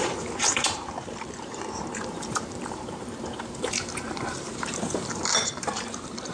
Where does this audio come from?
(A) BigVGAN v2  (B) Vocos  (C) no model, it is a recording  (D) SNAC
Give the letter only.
A